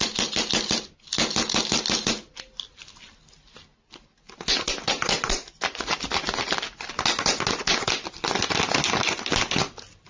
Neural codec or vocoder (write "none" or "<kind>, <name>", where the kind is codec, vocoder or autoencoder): none